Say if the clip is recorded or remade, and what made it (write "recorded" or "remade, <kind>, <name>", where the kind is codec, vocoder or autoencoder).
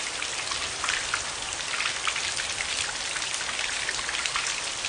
recorded